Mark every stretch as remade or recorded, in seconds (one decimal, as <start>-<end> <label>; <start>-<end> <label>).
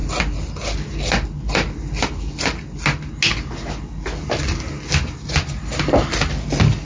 0.0-6.8 recorded